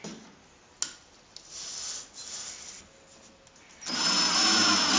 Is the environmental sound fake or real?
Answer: real